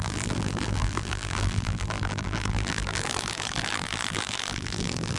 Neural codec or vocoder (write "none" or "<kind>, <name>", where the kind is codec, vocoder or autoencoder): vocoder, BigVGAN v2